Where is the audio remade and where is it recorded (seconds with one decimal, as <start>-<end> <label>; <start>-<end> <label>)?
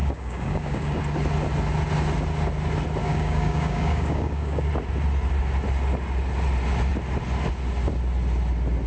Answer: 0.0-1.0 remade; 1.0-3.0 recorded; 3.0-4.7 remade; 4.7-8.9 recorded